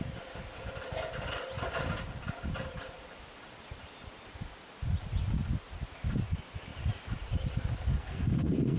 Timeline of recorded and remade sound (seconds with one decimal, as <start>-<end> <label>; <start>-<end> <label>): 0.0-7.9 recorded; 7.9-8.8 remade